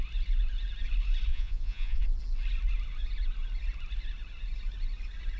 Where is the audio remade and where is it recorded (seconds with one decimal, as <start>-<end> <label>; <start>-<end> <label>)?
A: 0.0-1.3 recorded; 1.3-2.0 remade; 2.0-5.4 recorded